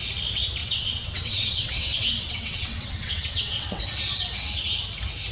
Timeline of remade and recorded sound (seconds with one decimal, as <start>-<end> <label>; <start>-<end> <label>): 0.0-0.6 recorded; 0.6-3.8 remade; 3.8-5.3 recorded